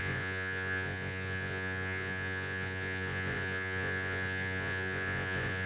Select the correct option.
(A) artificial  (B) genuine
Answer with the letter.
A